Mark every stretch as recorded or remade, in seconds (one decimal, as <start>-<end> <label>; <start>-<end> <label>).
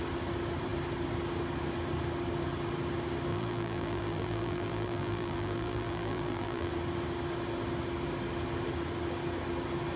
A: 0.0-3.3 recorded; 3.3-6.7 remade; 6.7-10.0 recorded